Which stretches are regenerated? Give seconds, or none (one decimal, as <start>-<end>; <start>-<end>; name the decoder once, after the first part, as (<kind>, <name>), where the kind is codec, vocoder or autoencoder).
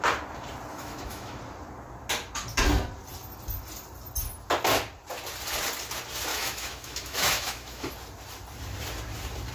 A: 0.7-1.4 (autoencoder, DAC-VAE); 6.3-7.9